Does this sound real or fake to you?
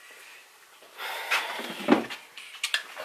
real